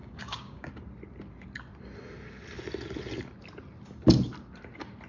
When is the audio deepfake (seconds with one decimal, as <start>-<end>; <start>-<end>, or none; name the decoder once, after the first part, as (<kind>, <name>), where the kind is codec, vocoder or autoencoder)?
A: 0.0-0.7 (codec, DAC)